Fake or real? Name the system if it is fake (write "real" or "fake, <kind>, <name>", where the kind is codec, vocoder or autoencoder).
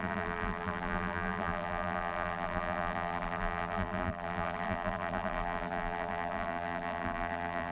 fake, vocoder, BigVGAN v2